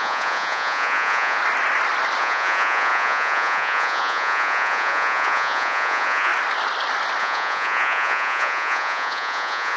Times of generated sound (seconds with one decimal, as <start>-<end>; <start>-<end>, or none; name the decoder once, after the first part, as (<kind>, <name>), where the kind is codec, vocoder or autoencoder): 0.0-1.4 (vocoder, Vocos); 2.2-6.3; 7.2-9.8

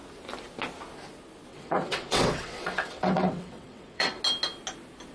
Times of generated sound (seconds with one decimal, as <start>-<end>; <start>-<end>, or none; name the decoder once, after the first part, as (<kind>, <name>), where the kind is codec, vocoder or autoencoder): 1.5-4.2 (vocoder, WaveNeXt)